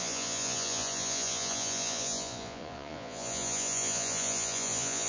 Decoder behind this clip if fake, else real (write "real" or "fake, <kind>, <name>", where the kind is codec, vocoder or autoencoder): fake, vocoder, Vocos